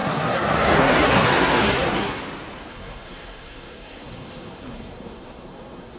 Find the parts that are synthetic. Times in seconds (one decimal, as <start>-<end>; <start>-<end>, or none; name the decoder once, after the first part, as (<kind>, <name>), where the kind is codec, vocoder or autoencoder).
0.0-2.2 (codec, SNAC); 2.7-6.0